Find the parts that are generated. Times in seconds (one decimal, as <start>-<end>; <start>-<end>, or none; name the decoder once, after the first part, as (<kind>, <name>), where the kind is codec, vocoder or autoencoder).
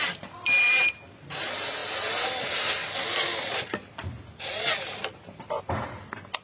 none